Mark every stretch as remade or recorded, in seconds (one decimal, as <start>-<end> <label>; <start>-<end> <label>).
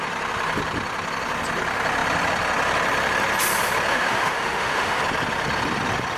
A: 0.0-3.9 recorded; 3.9-5.0 remade; 5.0-6.2 recorded